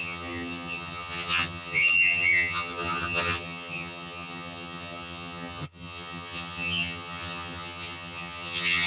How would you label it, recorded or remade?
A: remade